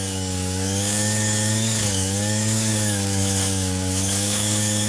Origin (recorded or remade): remade